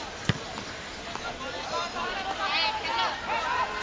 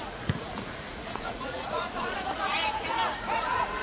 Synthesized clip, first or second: second